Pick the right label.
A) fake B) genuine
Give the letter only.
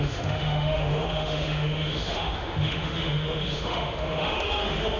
A